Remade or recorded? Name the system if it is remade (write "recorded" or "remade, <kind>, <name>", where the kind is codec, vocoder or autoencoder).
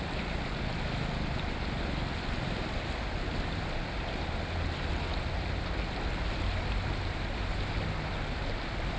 recorded